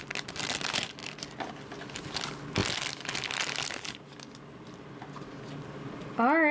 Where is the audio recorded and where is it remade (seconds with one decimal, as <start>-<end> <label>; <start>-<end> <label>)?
0.0-6.5 recorded